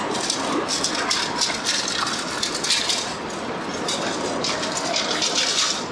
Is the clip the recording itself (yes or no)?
yes